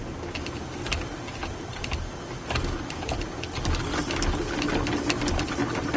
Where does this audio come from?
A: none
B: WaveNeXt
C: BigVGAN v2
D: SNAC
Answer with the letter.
A